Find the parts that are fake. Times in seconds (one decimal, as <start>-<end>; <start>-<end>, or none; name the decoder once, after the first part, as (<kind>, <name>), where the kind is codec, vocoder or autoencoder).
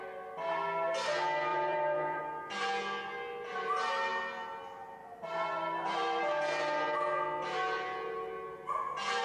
1.5-2.2 (vocoder, BigVGAN v2); 5.0-6.2